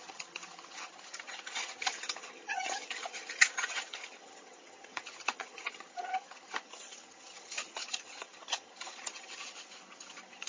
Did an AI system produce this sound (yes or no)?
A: yes